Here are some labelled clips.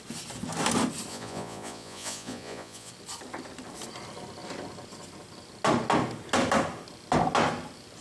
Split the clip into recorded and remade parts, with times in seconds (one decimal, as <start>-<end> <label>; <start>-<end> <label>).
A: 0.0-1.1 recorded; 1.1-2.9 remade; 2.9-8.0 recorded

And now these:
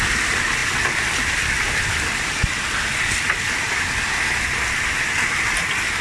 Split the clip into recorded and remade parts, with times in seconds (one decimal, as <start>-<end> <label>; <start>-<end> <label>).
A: 0.0-6.0 recorded

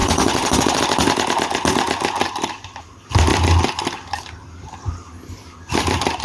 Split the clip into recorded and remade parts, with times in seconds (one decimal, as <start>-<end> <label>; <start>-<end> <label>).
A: 0.0-0.8 remade; 0.8-6.2 recorded

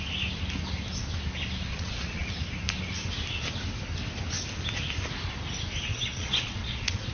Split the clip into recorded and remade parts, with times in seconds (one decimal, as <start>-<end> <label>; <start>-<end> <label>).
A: 0.0-1.7 recorded; 1.7-2.3 remade; 2.3-5.9 recorded; 5.9-7.1 remade

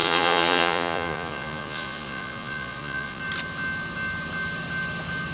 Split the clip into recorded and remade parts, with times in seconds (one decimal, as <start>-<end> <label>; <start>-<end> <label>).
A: 0.0-3.2 remade; 3.2-5.3 recorded

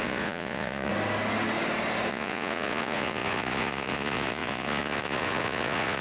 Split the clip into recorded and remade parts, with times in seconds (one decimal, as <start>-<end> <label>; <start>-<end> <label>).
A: 0.0-0.9 remade; 0.9-2.1 recorded; 2.1-6.0 remade